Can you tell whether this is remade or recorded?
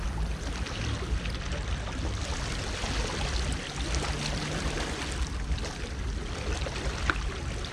recorded